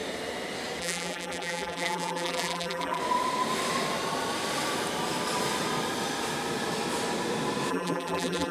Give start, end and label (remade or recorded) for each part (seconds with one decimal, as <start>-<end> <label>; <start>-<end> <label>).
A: 0.0-0.8 recorded; 0.8-3.0 remade; 3.0-7.7 recorded; 7.7-8.5 remade